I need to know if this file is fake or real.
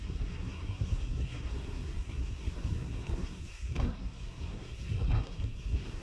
fake